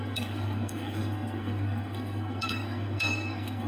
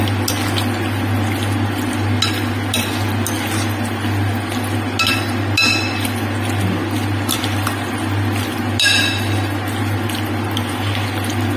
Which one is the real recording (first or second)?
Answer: second